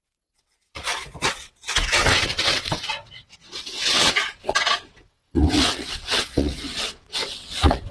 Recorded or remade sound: remade